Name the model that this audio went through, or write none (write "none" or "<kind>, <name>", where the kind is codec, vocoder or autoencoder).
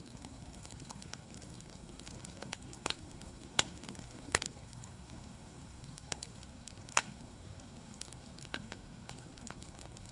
codec, SNAC